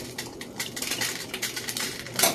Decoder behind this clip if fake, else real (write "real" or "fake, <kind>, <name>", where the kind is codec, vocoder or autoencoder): fake, vocoder, BigVGAN v2